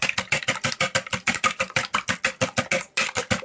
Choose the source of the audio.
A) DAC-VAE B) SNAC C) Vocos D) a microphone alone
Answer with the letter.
D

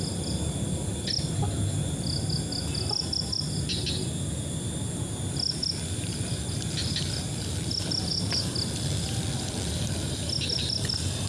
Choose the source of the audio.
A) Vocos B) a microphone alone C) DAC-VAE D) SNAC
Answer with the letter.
B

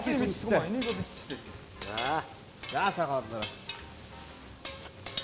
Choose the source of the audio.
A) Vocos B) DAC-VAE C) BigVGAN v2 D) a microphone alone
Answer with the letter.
D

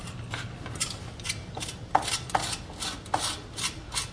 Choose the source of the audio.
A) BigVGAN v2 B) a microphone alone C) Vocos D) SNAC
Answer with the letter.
B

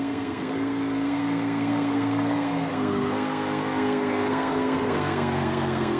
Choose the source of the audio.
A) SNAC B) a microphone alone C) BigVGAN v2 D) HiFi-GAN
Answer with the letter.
A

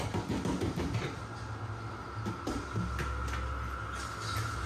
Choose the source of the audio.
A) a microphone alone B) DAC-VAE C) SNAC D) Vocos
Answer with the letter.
A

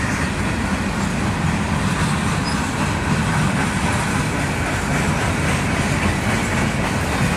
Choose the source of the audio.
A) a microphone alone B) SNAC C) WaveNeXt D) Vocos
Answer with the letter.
A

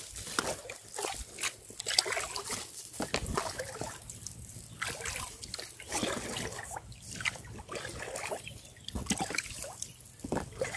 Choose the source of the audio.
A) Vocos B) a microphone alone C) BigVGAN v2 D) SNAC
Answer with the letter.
B